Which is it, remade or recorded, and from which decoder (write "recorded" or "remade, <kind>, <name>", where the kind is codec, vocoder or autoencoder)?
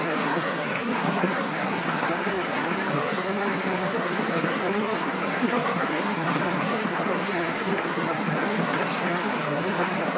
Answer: remade, codec, SNAC